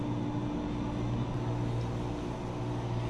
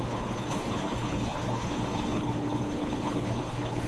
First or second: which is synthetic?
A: second